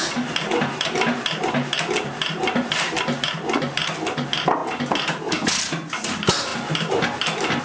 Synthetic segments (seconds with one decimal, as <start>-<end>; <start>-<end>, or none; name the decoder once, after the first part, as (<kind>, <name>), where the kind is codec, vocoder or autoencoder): none